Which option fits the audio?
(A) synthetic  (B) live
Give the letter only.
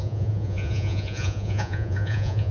A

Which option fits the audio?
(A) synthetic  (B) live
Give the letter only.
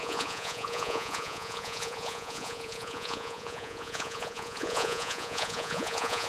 A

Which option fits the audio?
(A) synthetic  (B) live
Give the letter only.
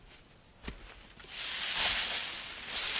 B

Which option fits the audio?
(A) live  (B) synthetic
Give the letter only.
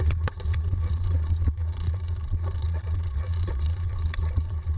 B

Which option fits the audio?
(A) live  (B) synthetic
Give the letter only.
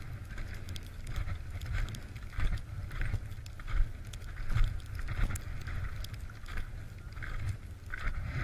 A